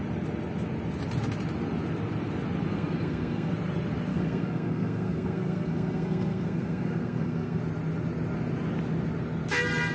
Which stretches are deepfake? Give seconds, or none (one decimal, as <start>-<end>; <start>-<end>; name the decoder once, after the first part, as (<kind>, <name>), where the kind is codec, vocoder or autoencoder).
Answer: 2.7-3.5 (codec, SNAC); 4.1-7.6